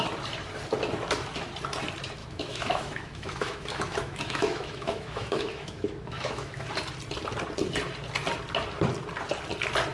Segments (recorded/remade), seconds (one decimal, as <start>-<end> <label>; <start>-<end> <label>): 0.0-2.2 recorded; 2.2-6.7 remade; 6.7-9.9 recorded